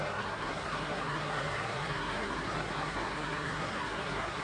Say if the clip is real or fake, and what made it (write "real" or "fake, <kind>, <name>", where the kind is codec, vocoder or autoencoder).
fake, codec, SNAC